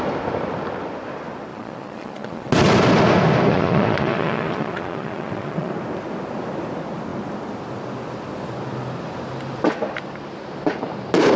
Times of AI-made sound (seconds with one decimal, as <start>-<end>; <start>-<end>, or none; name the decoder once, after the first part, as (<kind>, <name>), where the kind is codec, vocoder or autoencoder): 1.5-2.5 (vocoder, Vocos); 3.5-5.7